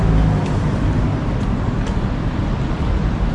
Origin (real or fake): real